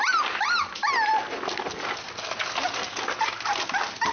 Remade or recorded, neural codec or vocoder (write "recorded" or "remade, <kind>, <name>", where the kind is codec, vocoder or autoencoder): recorded